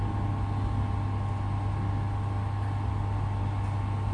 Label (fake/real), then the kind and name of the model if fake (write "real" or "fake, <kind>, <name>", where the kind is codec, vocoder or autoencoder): real